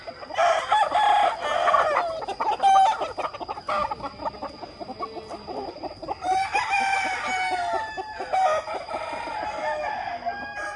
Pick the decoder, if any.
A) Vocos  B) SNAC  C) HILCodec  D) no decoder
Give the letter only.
D